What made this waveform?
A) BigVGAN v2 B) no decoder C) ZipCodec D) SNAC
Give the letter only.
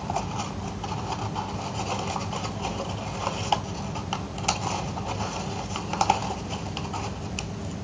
B